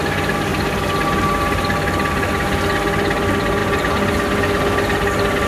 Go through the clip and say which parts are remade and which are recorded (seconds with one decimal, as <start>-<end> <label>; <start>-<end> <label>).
0.0-5.5 recorded